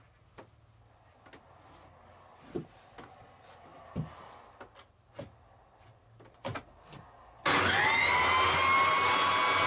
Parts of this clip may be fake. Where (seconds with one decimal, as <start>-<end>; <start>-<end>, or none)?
none